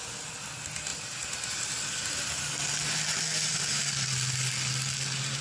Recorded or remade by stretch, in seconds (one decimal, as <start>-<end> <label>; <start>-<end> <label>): 0.0-5.4 recorded